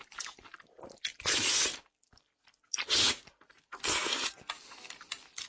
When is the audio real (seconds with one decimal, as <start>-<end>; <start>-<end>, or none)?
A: 0.0-5.5